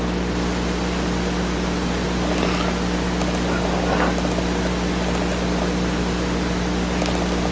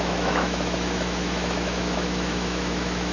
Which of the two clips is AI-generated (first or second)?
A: second